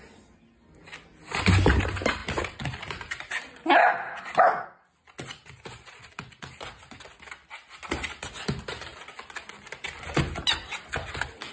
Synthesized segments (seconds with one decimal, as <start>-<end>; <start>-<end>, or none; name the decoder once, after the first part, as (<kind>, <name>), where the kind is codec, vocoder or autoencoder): none